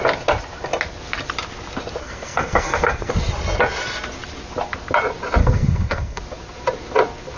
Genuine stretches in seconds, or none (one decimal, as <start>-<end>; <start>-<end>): 0.0-2.0; 3.1-5.4; 6.2-7.4